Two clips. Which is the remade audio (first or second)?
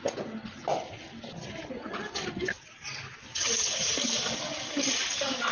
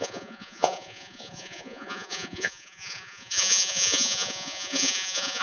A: second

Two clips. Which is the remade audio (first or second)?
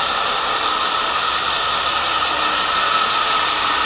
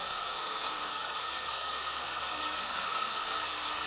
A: second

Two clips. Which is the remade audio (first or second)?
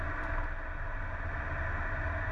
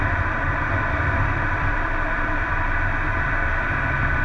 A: second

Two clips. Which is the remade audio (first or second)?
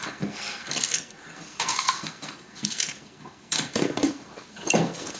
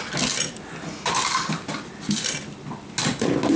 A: first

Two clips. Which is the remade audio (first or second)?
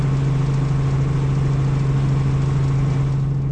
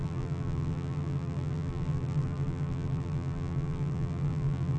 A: second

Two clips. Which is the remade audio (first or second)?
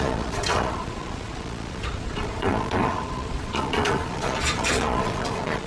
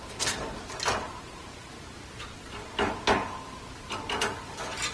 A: first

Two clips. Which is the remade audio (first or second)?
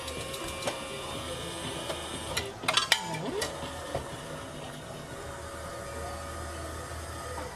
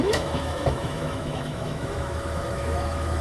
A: second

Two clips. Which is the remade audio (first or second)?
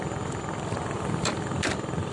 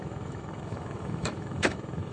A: second